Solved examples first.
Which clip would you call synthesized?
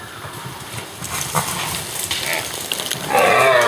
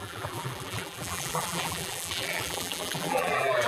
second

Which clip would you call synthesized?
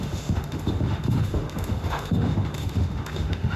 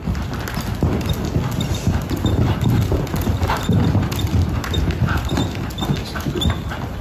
first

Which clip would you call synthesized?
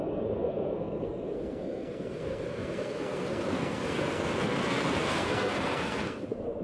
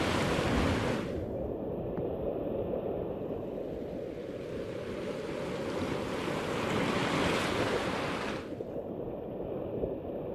first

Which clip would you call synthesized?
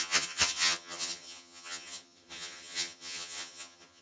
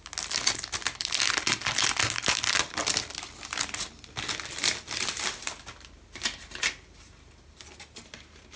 first